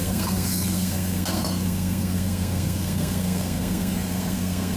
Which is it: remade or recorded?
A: remade